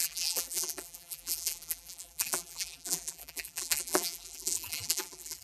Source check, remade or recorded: remade